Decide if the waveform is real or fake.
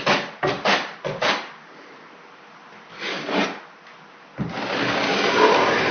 real